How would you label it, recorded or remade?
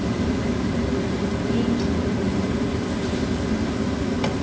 recorded